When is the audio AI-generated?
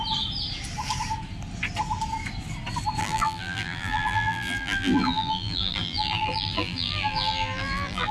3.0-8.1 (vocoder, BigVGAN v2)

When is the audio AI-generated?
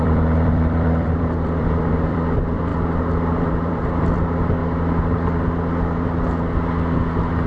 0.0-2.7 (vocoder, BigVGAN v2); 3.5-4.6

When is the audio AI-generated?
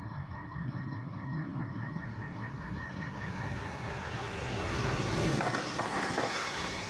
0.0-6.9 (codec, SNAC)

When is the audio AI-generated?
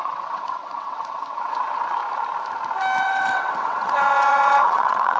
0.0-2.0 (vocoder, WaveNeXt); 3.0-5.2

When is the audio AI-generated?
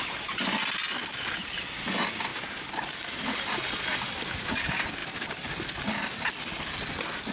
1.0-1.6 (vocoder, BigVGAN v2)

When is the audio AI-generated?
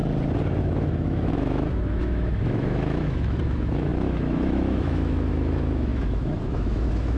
0.6-7.2 (autoencoder, DAC-VAE)